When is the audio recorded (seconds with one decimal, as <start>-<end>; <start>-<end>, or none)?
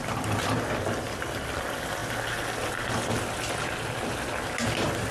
0.0-5.1